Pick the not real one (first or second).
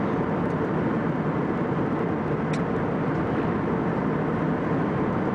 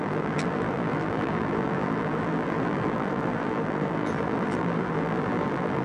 second